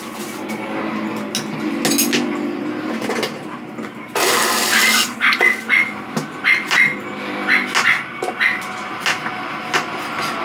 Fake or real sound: real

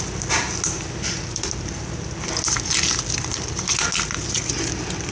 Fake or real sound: real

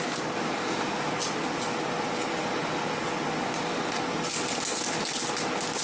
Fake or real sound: real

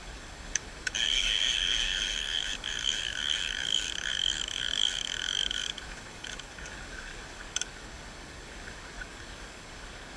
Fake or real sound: fake